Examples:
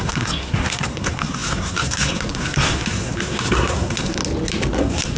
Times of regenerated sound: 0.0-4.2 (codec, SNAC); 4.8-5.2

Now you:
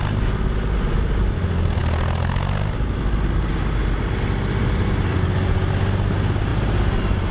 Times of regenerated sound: none